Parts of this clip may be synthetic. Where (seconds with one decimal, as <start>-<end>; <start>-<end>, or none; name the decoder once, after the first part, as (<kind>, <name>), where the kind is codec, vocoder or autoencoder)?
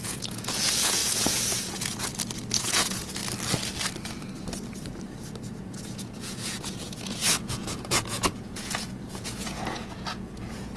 0.0-2.1 (vocoder, Vocos); 2.6-3.2; 5.6-10.8